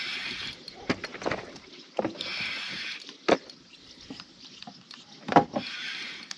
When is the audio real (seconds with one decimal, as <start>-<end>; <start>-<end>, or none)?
0.0-1.1; 4.5-6.4